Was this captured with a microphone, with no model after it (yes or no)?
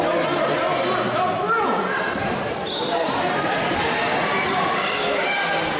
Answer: yes